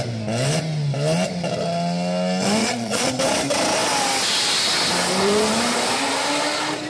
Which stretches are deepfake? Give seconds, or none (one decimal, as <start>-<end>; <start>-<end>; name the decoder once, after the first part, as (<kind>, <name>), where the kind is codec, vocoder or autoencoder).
2.6-3.1 (vocoder, Vocos)